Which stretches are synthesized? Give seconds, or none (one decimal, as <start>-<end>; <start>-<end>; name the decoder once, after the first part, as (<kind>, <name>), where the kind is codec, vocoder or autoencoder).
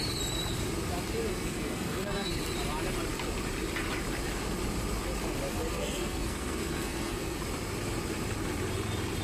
1.3-2.3 (codec, SNAC); 5.5-7.4